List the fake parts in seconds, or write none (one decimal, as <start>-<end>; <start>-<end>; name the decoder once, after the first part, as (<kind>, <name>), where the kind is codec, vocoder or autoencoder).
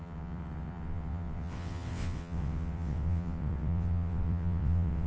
0.0-5.1 (vocoder, WaveNeXt)